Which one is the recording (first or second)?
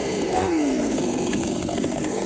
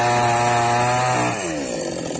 second